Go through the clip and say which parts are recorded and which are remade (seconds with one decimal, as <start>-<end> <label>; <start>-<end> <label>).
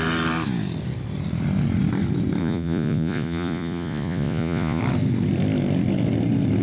0.0-2.4 recorded; 2.4-4.8 remade; 4.8-6.6 recorded